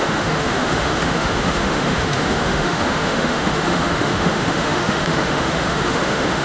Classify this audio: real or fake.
fake